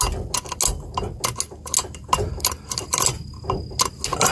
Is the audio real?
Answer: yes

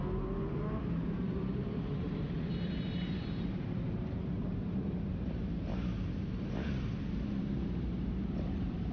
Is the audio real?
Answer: no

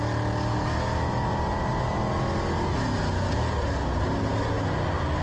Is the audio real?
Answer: yes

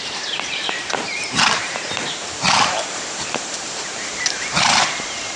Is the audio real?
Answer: no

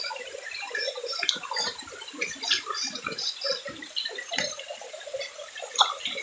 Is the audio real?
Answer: no